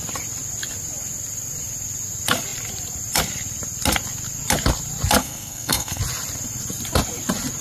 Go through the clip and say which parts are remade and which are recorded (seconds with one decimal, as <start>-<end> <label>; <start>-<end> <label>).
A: 0.0-5.2 recorded; 5.2-6.0 remade; 6.0-7.6 recorded